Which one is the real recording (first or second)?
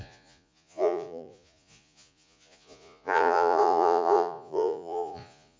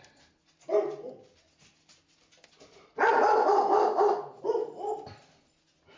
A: second